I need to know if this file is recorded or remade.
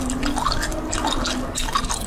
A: recorded